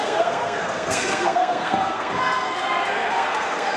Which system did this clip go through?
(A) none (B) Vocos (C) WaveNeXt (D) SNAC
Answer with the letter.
D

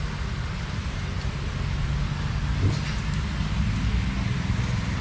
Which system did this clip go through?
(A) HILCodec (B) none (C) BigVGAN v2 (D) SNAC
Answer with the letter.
B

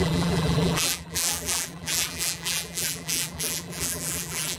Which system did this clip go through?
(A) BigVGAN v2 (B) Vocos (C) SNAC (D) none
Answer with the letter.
A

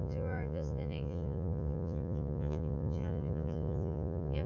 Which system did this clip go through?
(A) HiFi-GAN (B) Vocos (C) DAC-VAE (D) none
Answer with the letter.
B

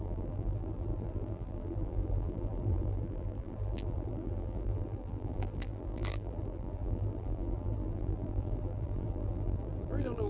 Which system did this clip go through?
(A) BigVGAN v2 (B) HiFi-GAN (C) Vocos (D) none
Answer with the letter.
A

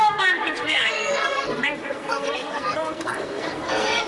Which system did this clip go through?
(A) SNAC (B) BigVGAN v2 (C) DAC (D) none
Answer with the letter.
A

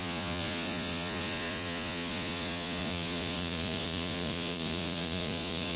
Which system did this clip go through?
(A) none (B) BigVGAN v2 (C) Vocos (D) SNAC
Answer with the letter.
C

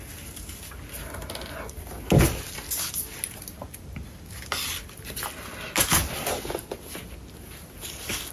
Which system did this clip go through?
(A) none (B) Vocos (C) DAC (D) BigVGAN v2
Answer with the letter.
A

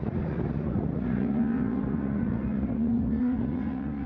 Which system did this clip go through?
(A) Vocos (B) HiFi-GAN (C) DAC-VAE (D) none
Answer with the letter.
A